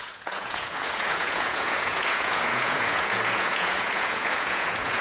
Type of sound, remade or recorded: remade